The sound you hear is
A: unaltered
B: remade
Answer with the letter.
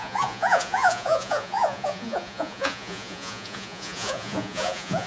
B